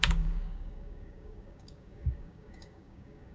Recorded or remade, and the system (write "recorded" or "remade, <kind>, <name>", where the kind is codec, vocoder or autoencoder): remade, codec, DAC